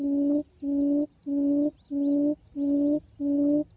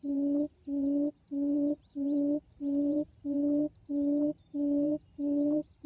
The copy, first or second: second